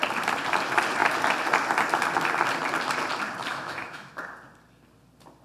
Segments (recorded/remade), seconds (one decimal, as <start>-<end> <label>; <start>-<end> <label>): 0.0-3.5 recorded; 3.5-4.1 remade; 4.1-5.4 recorded